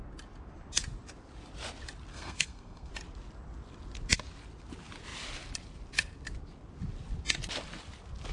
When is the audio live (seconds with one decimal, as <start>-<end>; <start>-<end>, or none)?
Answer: 0.0-2.1; 2.9-8.3

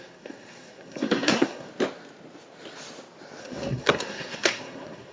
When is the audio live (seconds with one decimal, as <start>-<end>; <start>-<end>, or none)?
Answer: 1.7-3.4

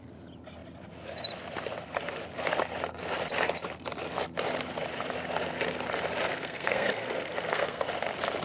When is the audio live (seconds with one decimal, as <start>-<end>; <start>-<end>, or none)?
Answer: 0.0-6.3; 7.8-8.4

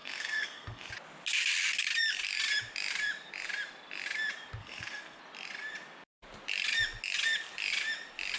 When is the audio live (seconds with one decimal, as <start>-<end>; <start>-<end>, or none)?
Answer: 0.9-4.6; 5.2-8.4